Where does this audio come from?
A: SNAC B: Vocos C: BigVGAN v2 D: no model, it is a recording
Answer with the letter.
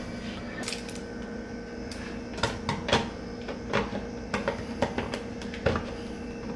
D